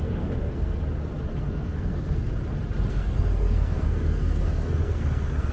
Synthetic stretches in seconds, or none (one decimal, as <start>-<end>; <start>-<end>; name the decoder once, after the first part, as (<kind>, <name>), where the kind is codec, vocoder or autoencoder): 0.0-0.8 (codec, SNAC); 1.4-2.3; 2.9-5.5